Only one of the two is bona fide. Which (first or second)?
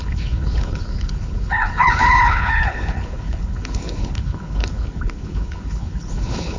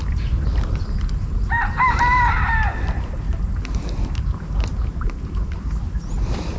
second